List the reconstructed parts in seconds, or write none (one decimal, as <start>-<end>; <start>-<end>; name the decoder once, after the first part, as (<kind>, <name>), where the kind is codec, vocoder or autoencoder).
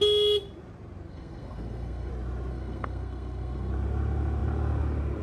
1.1-2.1 (codec, SNAC); 2.5-3.7